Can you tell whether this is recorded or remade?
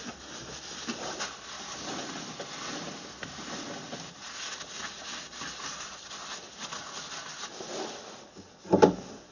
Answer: recorded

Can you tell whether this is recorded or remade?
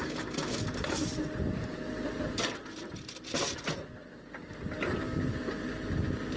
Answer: recorded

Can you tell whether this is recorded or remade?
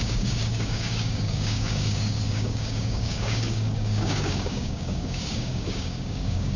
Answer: remade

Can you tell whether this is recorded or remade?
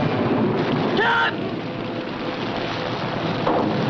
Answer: recorded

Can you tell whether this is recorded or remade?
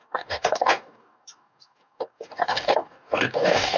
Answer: remade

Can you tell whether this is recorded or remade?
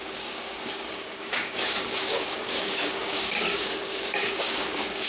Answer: remade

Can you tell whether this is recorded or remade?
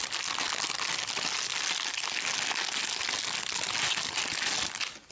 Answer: recorded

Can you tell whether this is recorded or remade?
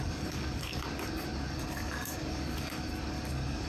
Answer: remade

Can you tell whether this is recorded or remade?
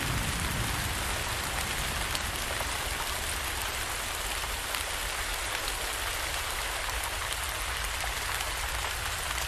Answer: recorded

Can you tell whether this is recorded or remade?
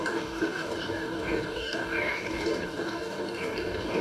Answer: remade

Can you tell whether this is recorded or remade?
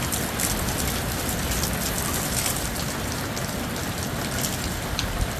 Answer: recorded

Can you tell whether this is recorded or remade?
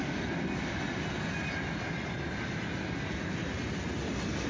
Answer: recorded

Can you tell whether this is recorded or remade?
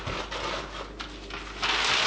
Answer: recorded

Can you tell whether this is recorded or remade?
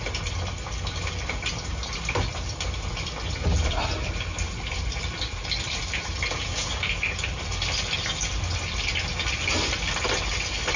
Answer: recorded